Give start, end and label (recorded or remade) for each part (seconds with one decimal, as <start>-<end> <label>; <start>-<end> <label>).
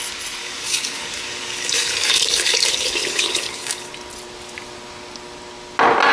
0.0-0.4 recorded; 0.4-3.9 remade; 3.9-6.1 recorded